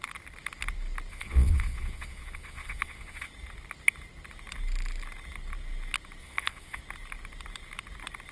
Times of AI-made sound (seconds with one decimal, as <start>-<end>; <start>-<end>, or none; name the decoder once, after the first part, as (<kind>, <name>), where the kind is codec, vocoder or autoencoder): 1.1-3.3 (vocoder, Vocos); 6.2-6.8